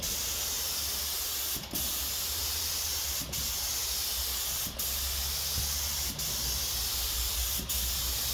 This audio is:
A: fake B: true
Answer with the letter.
B